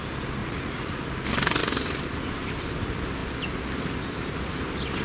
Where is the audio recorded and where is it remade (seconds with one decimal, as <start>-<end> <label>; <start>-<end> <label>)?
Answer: 0.0-0.4 recorded; 0.4-1.0 remade; 1.0-5.0 recorded